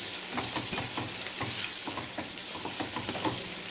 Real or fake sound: real